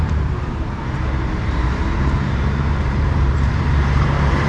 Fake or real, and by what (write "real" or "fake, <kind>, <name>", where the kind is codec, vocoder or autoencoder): fake, vocoder, BigVGAN v2